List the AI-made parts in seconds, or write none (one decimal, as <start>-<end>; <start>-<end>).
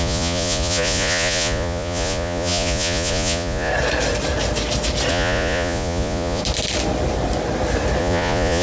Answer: 0.0-3.7; 5.1-6.4; 8.0-8.6